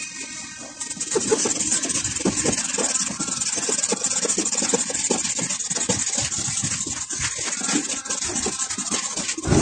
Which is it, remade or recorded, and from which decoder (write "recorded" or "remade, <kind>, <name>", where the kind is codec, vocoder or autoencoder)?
recorded